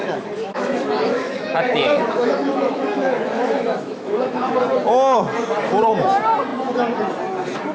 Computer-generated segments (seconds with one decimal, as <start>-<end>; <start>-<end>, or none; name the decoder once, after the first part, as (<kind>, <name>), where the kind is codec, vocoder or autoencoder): 0.0-4.6 (autoencoder, DAC-VAE)